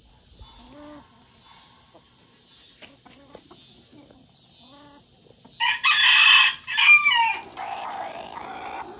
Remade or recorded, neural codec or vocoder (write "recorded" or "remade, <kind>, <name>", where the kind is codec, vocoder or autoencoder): recorded